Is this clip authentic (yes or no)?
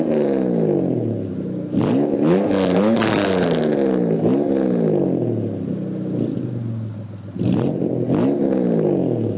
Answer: yes